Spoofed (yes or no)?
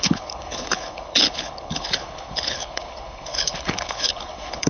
yes